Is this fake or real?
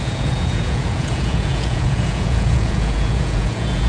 fake